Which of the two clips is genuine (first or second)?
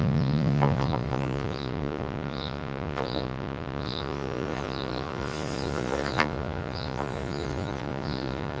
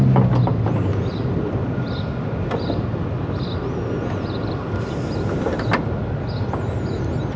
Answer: second